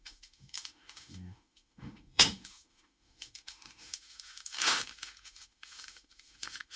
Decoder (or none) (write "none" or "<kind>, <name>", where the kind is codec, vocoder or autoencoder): autoencoder, DAC-VAE